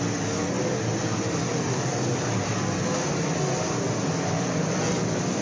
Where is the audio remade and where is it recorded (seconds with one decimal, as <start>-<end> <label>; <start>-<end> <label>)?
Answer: 0.0-1.5 recorded; 1.5-2.4 remade; 2.4-5.4 recorded